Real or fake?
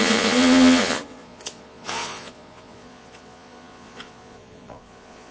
fake